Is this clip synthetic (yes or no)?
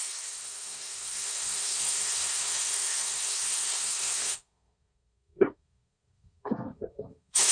yes